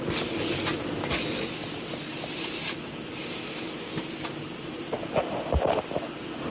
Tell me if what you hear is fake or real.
real